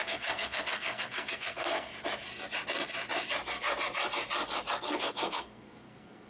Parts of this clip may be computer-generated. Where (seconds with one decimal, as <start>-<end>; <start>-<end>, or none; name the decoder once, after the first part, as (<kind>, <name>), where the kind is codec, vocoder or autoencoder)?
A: 0.0-1.9 (codec, SNAC); 4.7-6.3